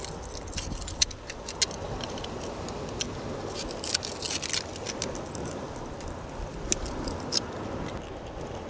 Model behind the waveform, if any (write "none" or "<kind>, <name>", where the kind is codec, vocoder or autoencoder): none